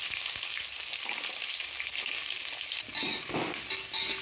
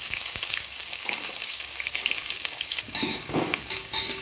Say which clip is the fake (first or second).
second